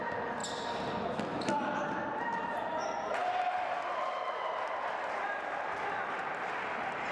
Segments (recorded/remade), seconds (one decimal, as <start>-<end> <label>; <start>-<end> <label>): 0.0-7.1 recorded